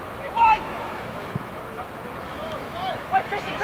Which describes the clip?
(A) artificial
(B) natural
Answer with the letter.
A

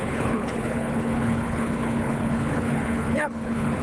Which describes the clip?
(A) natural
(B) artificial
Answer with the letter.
B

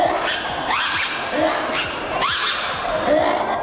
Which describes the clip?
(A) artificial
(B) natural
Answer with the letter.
B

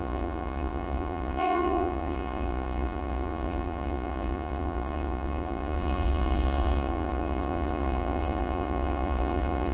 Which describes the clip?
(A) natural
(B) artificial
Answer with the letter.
B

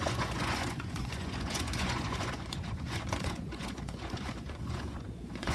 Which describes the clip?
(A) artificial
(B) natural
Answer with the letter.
A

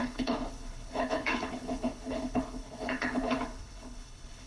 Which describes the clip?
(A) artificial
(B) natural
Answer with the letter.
A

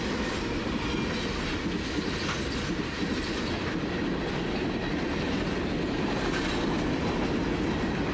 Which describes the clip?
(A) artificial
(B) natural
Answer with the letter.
B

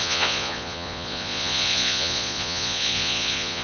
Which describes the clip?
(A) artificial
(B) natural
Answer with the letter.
A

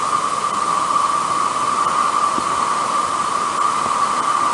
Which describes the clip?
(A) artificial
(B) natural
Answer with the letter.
B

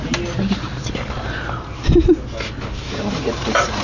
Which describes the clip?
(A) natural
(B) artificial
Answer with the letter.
A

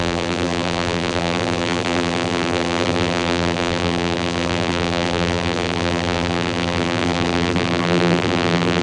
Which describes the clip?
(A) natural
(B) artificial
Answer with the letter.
B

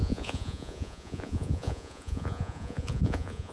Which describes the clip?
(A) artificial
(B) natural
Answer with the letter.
A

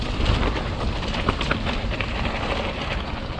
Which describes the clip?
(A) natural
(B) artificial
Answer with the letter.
A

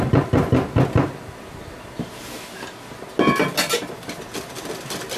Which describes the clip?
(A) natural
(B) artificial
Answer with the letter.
A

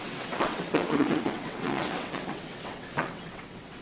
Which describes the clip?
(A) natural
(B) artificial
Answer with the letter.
B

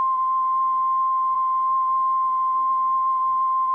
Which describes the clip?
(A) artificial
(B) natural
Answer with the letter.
A